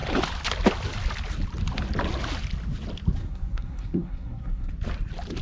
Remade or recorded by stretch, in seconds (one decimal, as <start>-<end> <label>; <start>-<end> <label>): 0.0-3.2 recorded; 3.2-4.7 remade; 4.7-5.4 recorded